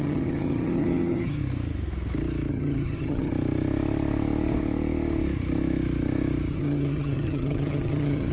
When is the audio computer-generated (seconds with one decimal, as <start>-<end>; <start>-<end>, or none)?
0.0-1.4; 2.5-3.3; 6.5-8.3